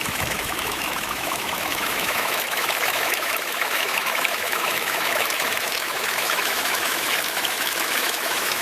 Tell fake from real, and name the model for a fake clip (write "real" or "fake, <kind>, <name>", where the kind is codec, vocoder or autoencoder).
fake, autoencoder, DAC-VAE